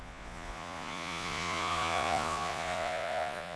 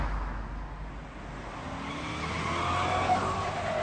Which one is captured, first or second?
second